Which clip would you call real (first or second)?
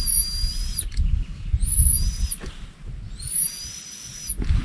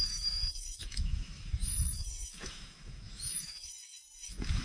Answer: first